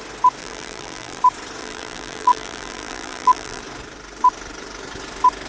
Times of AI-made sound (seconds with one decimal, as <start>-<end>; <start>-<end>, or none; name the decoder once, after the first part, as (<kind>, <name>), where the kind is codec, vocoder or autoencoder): 0.4-1.2 (vocoder, BigVGAN v2); 1.6-3.6